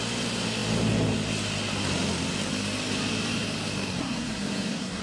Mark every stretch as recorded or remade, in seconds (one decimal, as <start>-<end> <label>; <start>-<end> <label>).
0.0-4.0 recorded; 4.0-5.0 remade